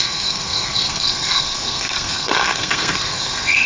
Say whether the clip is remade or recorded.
remade